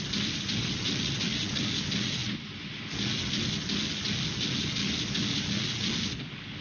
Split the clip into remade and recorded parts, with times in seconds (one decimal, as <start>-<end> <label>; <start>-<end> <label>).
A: 0.0-0.6 recorded; 0.6-1.6 remade; 1.6-6.6 recorded